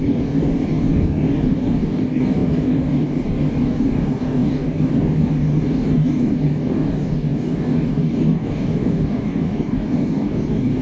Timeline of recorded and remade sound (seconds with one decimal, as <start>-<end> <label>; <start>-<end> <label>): 0.0-10.8 remade